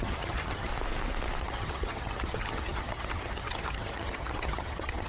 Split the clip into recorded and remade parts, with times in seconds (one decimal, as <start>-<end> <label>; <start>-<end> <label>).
0.0-0.7 remade; 0.7-1.4 recorded; 1.4-5.1 remade